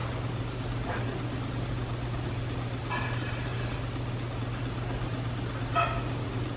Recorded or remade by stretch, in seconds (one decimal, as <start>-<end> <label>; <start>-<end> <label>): 0.0-1.5 remade; 1.5-3.5 recorded; 3.5-4.4 remade; 4.4-6.6 recorded